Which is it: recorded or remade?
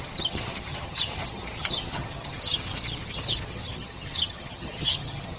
remade